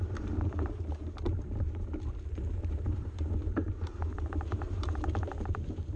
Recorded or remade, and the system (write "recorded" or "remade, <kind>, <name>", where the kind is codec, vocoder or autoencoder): remade, vocoder, BigVGAN v2